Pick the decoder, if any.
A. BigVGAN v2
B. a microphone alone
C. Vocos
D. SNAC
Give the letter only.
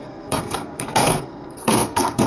D